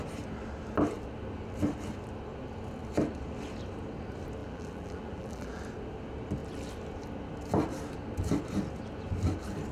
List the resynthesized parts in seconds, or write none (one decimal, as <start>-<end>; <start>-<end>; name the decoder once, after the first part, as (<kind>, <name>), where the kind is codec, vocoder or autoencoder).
4.4-5.6 (vocoder, BigVGAN v2)